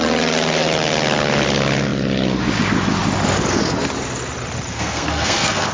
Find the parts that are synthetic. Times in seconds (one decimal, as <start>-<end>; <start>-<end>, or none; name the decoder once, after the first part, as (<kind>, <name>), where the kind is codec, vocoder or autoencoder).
4.7-5.7 (codec, SNAC)